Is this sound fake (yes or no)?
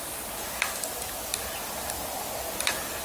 no